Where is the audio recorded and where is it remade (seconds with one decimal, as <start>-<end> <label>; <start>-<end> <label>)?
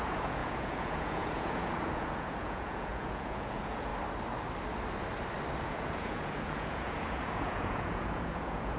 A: 0.0-3.9 remade; 3.9-5.6 recorded; 5.6-8.8 remade